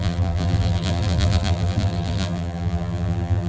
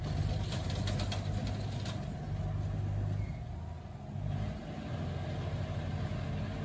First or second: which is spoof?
first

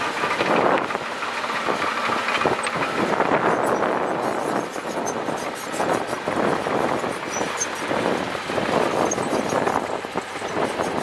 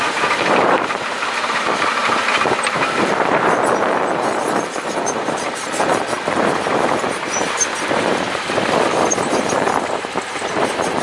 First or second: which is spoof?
second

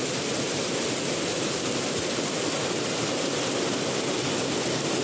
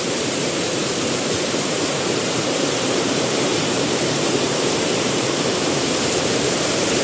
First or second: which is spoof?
second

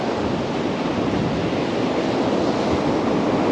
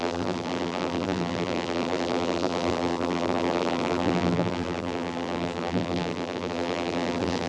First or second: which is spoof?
second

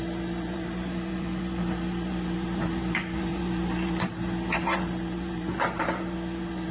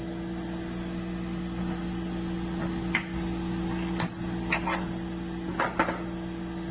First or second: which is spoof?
first